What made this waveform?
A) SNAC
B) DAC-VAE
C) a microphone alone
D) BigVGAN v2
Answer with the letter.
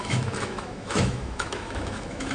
B